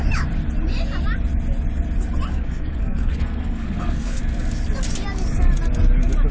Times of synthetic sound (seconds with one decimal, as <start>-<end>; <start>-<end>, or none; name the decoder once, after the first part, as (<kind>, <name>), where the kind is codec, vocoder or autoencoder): 2.3-4.2 (codec, SNAC)